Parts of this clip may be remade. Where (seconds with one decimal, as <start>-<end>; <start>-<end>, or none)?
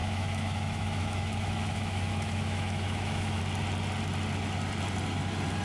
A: 0.0-3.4